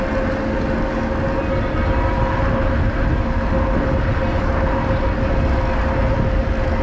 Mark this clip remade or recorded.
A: recorded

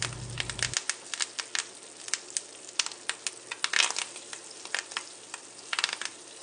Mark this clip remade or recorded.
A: recorded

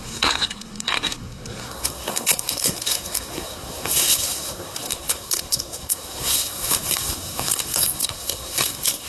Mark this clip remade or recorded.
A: remade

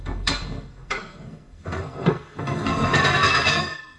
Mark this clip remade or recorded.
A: remade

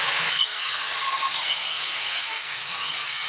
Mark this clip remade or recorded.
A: remade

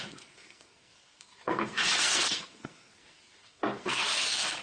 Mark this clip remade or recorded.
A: remade